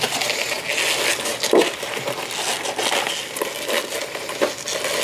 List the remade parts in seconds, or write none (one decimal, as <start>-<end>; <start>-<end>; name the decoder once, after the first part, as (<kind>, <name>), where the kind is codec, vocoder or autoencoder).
none